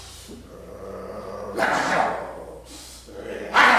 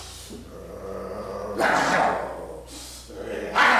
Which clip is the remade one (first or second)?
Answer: first